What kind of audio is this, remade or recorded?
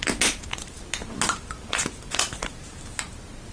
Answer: recorded